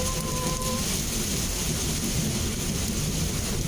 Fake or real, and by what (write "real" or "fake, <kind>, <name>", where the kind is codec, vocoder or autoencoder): real